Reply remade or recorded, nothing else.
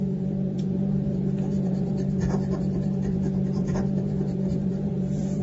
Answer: remade